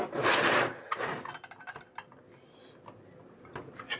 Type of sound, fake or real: real